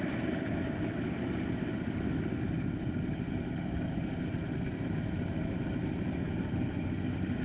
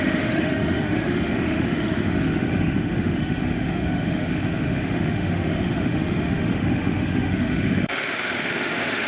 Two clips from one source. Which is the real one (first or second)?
first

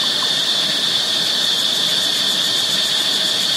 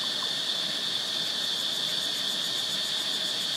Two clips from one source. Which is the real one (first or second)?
second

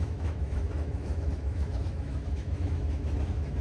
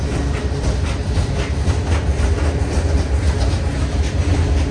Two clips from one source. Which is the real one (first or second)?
second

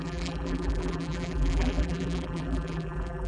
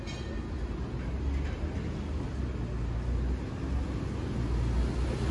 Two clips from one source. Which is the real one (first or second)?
second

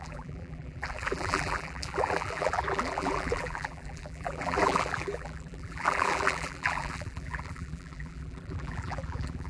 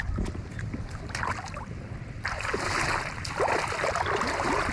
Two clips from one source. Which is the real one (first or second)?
second